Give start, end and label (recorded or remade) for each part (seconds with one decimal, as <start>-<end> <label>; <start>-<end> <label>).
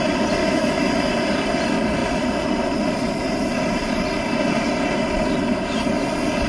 0.0-0.4 recorded; 0.4-0.9 remade; 0.9-6.5 recorded